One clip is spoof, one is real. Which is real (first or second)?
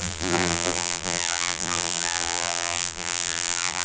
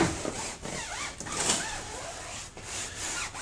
second